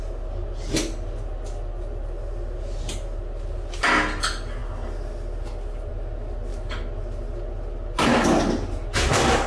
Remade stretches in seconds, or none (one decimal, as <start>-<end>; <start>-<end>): none

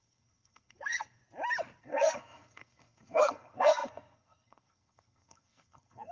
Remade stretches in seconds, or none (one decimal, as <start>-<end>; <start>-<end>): 0.0-1.2; 1.8-6.1